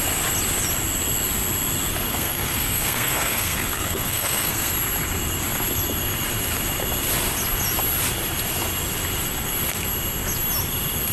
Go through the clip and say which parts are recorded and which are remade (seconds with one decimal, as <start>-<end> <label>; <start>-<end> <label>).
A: 0.0-2.1 recorded; 2.1-4.7 remade; 4.7-11.1 recorded